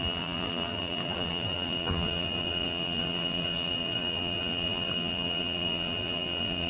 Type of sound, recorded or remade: remade